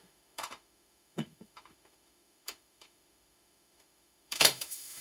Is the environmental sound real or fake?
fake